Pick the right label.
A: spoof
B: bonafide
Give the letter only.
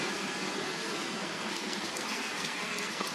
A